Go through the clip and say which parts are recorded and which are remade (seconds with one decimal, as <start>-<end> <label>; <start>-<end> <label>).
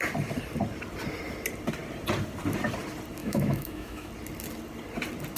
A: 0.0-3.2 recorded; 3.2-4.1 remade; 4.1-5.4 recorded